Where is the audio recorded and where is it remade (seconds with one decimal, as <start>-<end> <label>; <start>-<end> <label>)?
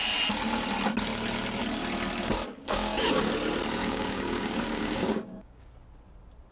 0.0-2.6 recorded; 2.6-3.3 remade; 3.3-3.8 recorded; 3.8-5.7 remade; 5.7-6.5 recorded